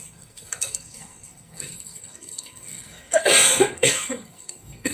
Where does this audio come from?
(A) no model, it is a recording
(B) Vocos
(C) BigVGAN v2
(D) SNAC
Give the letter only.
D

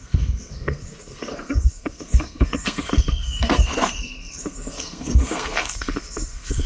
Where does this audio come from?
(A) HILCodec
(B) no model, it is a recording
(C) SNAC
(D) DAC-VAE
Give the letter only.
C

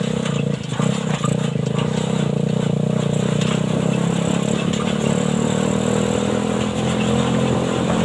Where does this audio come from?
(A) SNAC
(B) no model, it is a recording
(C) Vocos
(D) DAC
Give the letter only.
B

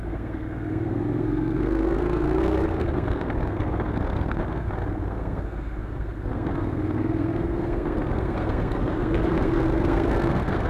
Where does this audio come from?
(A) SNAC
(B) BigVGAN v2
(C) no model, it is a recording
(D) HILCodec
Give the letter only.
A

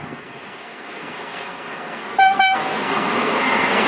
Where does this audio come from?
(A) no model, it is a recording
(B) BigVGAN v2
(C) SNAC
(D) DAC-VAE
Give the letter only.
C